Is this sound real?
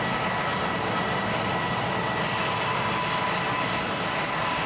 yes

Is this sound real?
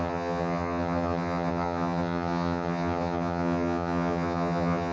no